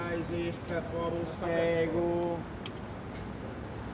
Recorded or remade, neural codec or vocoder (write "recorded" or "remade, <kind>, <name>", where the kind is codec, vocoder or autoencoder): recorded